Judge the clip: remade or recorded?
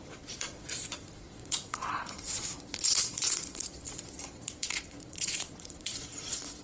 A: remade